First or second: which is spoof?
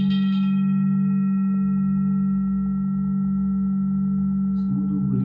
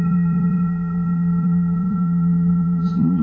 second